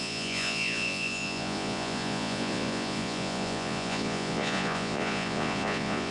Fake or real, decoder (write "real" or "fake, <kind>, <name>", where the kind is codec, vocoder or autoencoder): fake, vocoder, Vocos